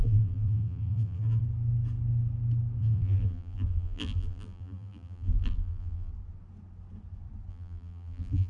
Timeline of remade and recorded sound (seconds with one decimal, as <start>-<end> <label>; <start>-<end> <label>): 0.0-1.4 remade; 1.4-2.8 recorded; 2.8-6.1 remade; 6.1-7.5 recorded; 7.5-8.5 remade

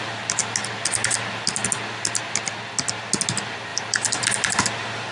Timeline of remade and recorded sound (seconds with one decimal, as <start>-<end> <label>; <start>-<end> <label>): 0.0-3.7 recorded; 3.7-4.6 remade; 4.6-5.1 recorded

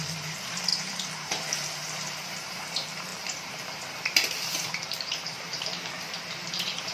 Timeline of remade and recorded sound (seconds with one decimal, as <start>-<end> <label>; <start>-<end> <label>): 0.0-6.9 remade

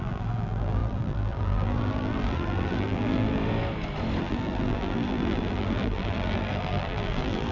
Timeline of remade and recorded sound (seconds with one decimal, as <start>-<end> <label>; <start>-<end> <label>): 0.0-3.4 remade; 3.4-4.2 recorded; 4.2-7.5 remade